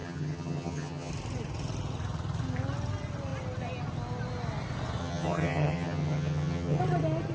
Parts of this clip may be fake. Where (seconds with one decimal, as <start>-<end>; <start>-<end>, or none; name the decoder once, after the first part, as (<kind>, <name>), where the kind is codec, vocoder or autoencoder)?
0.0-1.1 (vocoder, HiFi-GAN); 5.0-6.8